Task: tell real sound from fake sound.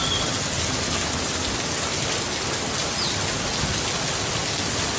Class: real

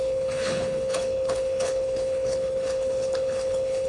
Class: fake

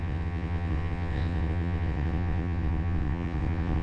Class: fake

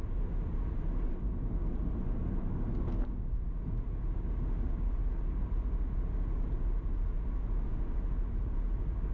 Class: real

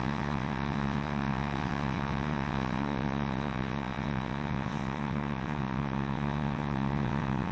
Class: fake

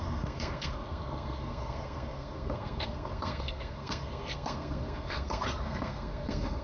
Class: fake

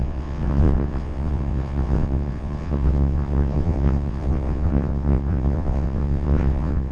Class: fake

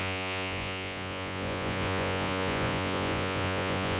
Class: fake